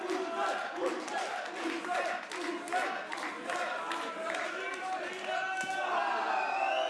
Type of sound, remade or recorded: recorded